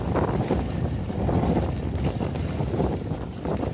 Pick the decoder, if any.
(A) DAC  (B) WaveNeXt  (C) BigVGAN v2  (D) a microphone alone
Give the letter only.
D